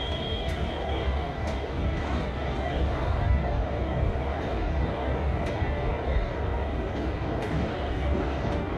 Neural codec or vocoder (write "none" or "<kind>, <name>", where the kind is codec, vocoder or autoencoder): codec, DAC